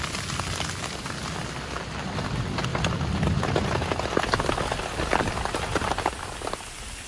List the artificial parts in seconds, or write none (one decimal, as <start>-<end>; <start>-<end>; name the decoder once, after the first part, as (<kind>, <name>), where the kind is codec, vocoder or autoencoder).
none